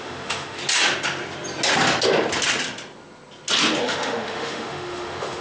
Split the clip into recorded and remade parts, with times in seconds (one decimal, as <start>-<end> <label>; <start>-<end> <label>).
0.0-0.6 remade; 0.6-3.8 recorded; 3.8-5.4 remade